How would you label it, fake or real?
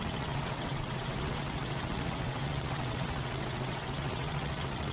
fake